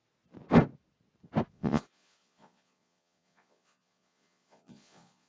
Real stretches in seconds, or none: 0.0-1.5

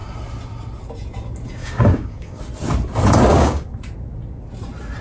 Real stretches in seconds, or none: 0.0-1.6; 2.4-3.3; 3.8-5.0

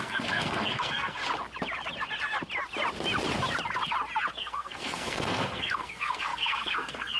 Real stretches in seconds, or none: 1.2-4.3

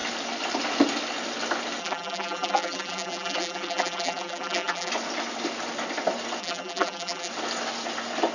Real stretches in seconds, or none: 0.0-1.8; 4.9-6.4; 7.3-8.3

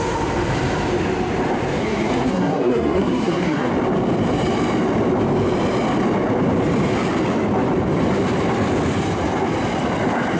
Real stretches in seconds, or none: 0.0-1.8; 3.7-10.4

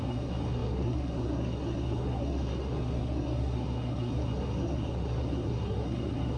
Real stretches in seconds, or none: none

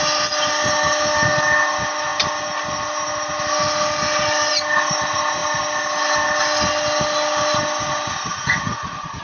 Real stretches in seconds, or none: 0.0-8.3

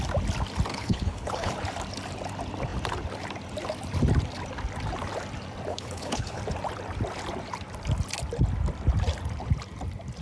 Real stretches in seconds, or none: 0.0-0.7; 1.5-5.7; 6.4-10.2